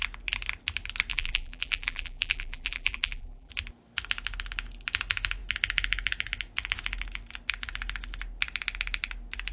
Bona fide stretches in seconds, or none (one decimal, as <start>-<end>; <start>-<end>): 0.0-1.1; 3.5-9.5